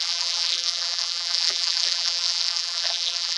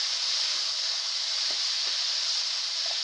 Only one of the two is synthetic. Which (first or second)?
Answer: first